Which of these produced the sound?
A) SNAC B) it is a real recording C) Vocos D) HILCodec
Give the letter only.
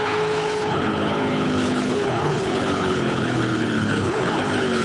D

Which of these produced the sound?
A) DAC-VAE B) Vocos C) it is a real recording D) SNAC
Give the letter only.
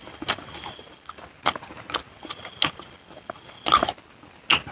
C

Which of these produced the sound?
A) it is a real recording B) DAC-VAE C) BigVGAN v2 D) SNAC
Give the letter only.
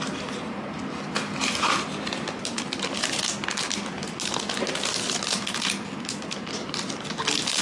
A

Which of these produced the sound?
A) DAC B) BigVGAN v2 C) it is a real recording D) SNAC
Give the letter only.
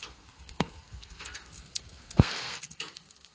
D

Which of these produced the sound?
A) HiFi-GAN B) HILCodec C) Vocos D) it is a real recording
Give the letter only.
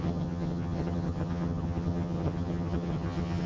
A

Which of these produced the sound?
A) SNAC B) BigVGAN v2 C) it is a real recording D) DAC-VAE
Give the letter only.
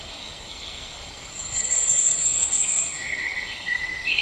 A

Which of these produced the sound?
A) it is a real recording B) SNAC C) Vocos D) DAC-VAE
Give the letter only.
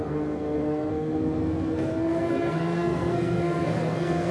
B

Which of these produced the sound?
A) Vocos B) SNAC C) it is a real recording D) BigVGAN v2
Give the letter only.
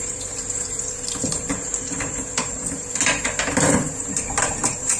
D